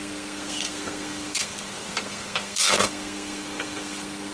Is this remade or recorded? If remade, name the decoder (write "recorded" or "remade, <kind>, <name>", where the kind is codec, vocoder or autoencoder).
remade, codec, SNAC